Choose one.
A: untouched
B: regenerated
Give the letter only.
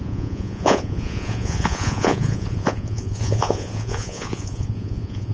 B